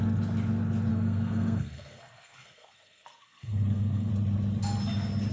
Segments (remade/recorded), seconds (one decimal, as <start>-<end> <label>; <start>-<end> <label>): 0.0-0.9 recorded; 0.9-4.1 remade; 4.1-5.3 recorded

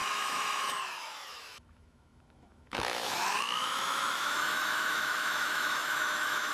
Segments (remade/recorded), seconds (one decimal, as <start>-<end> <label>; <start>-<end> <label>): 0.0-6.5 remade

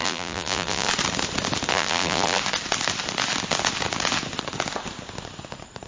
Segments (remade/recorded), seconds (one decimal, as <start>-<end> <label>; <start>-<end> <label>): 0.0-0.9 remade; 0.9-1.7 recorded; 1.7-2.4 remade; 2.4-5.9 recorded

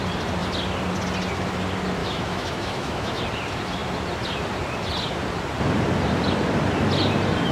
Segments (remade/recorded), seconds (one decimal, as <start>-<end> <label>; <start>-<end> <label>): 0.0-2.0 recorded; 2.0-3.2 remade; 3.2-7.5 recorded

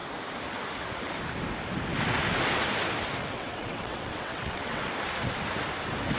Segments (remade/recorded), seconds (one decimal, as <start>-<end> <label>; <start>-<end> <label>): 0.0-3.2 recorded; 3.2-4.9 remade; 4.9-6.2 recorded

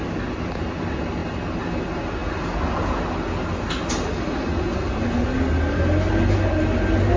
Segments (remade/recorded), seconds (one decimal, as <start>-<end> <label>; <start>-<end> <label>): 0.0-7.2 recorded